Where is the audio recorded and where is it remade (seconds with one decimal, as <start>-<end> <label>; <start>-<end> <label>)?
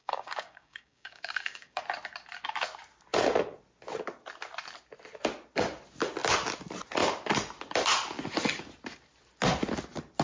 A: 0.0-1.8 remade; 1.8-10.2 recorded